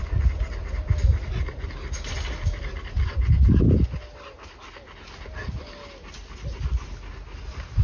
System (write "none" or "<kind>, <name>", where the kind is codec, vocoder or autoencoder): none